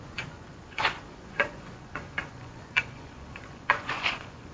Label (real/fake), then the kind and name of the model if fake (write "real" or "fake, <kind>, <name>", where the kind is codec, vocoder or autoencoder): fake, vocoder, Vocos